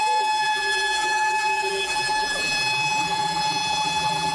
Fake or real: fake